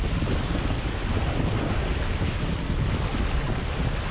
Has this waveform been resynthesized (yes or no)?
no